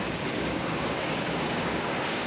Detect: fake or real fake